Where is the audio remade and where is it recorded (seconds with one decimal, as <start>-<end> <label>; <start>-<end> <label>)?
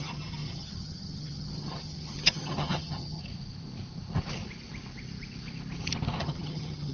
0.0-3.2 remade; 3.2-6.2 recorded; 6.2-6.9 remade